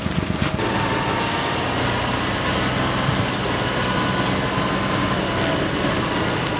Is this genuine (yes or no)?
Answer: yes